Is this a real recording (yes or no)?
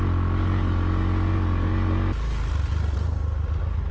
yes